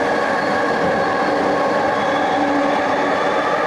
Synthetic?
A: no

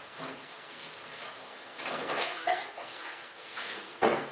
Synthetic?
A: yes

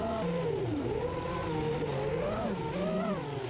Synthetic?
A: no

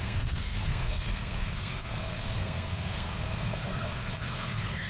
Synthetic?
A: yes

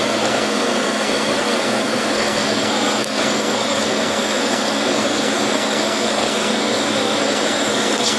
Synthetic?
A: yes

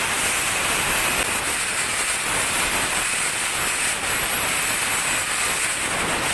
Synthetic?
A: no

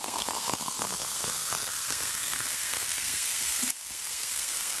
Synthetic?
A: yes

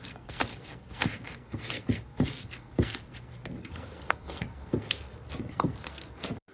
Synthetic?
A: yes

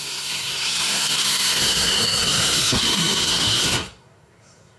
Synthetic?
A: yes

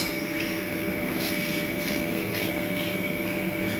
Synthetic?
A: yes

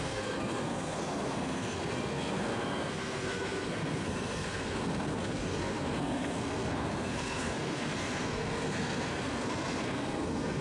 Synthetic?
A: yes